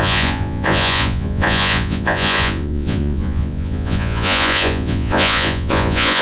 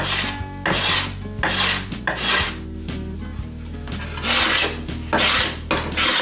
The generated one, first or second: first